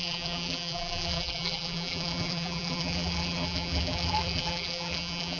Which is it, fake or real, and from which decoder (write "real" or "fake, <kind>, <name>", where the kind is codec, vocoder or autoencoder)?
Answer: fake, vocoder, BigVGAN v2